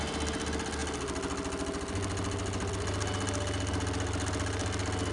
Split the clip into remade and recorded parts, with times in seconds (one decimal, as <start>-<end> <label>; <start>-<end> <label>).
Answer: 0.0-5.1 recorded